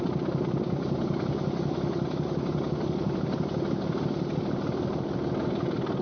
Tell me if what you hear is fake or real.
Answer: real